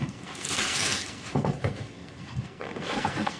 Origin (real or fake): fake